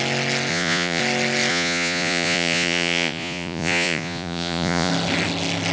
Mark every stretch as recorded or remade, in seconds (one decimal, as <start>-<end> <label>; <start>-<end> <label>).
0.0-0.5 recorded; 0.5-1.0 remade; 1.0-1.5 recorded; 1.5-4.9 remade; 4.9-5.7 recorded